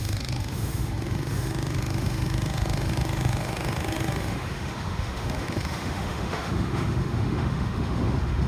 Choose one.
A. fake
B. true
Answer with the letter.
A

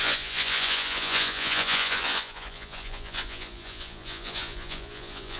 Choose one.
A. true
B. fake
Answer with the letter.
B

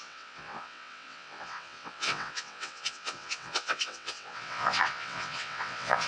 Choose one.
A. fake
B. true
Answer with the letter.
A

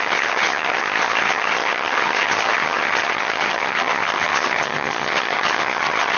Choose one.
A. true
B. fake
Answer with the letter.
B